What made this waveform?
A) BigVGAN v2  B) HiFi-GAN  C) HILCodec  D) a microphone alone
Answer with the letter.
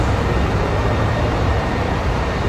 A